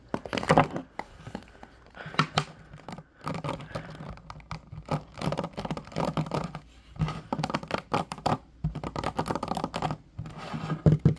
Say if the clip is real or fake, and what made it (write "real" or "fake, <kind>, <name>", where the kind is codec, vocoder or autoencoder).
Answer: real